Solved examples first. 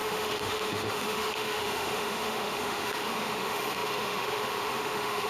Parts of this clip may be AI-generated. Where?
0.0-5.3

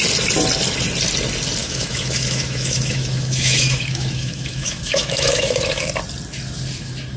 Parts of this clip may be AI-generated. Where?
1.6-5.9